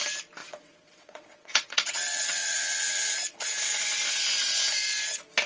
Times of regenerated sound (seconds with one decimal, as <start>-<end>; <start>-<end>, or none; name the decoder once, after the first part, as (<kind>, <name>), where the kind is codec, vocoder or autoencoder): 0.4-3.1 (vocoder, WaveNeXt)